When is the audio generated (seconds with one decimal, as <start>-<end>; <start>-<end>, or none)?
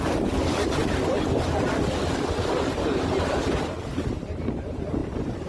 5.0-5.5